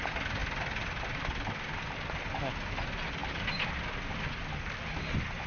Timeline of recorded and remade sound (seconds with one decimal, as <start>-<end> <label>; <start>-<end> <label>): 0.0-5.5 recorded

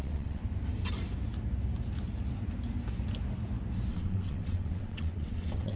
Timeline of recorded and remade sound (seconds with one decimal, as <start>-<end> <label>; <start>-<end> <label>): 0.0-0.4 remade; 0.4-3.9 recorded; 3.9-5.8 remade

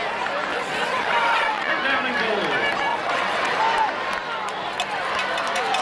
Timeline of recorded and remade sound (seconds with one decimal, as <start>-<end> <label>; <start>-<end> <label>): 0.0-0.5 recorded; 0.5-1.7 remade; 1.7-2.9 recorded; 2.9-3.6 remade; 3.6-5.8 recorded

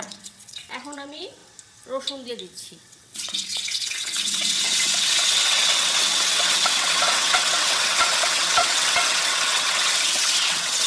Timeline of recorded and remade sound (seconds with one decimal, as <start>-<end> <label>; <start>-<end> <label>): 0.0-1.4 remade; 1.4-2.3 recorded; 2.3-10.9 remade

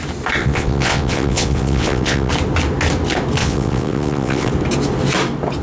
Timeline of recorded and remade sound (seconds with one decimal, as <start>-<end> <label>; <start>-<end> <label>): 0.0-0.4 recorded; 0.4-2.3 remade; 2.3-3.4 recorded; 3.4-4.5 remade; 4.5-5.6 recorded

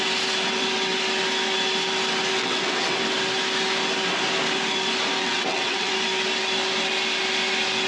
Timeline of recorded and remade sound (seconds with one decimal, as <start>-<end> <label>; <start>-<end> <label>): 0.0-2.4 recorded; 2.4-3.0 remade; 3.0-5.2 recorded; 5.2-5.9 remade; 5.9-7.9 recorded